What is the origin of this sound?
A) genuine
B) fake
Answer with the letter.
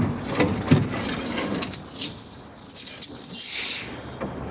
A